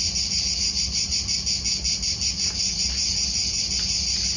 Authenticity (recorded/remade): recorded